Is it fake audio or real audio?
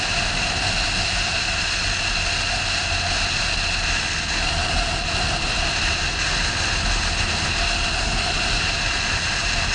real